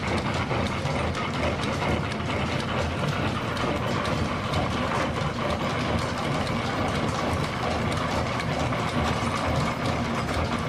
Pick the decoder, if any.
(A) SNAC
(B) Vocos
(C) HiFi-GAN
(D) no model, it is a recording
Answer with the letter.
D